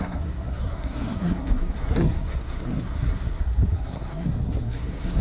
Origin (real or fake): fake